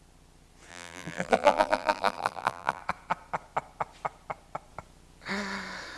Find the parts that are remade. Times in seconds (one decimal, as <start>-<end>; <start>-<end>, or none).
0.7-2.8